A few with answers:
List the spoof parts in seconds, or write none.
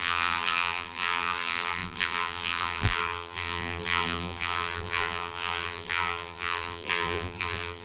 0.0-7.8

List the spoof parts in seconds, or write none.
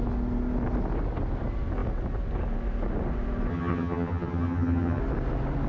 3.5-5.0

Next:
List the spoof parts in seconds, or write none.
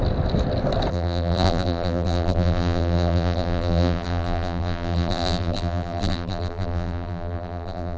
0.9-8.0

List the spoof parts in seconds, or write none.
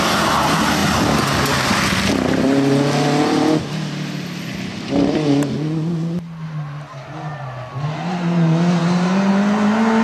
8.8-9.3